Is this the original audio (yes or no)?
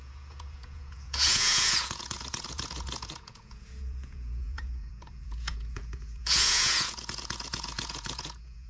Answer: no